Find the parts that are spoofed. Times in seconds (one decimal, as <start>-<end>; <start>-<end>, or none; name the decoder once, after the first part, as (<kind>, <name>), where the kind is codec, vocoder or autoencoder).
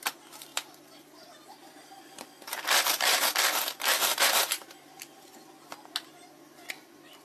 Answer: 0.5-3.3 (vocoder, BigVGAN v2); 4.1-5.3